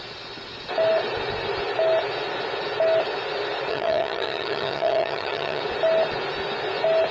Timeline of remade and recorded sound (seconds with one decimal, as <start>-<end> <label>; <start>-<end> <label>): 0.0-3.7 recorded; 3.7-5.6 remade; 5.6-7.1 recorded